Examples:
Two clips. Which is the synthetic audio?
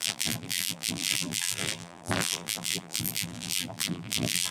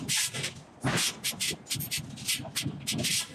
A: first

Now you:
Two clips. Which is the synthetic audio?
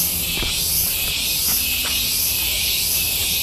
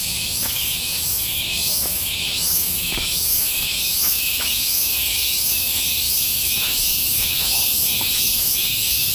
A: second